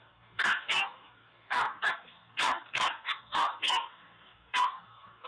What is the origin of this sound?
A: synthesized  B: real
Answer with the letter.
A